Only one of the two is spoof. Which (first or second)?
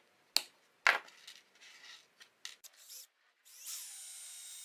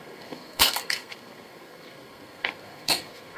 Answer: second